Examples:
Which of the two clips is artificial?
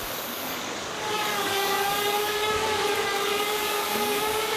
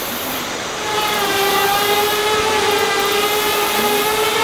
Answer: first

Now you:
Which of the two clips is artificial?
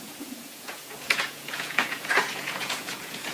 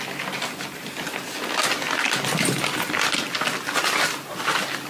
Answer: first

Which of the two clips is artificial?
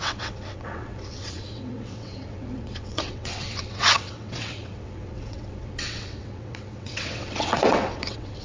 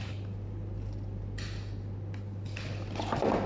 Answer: first